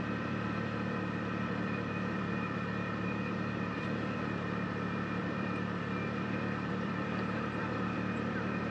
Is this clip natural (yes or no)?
no